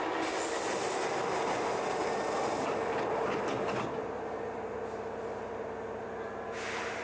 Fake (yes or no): no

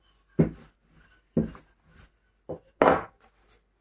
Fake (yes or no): no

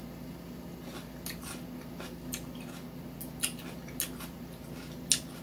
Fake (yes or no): no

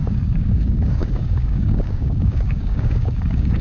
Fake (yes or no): yes